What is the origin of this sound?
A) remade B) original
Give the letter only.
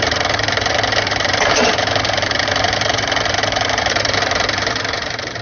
A